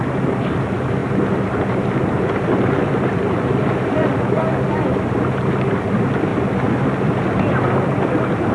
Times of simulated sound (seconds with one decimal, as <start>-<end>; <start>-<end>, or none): none